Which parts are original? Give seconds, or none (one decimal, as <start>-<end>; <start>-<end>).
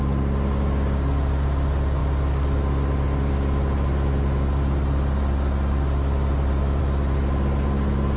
0.0-8.2